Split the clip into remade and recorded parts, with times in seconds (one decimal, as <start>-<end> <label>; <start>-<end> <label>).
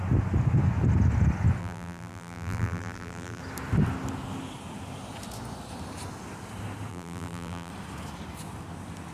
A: 0.0-1.6 recorded; 1.6-3.4 remade; 3.4-6.9 recorded; 6.9-7.7 remade; 7.7-9.1 recorded